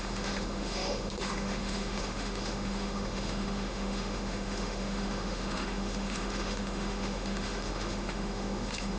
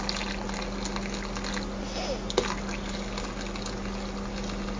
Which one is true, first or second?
second